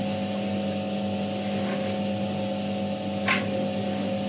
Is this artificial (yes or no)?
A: no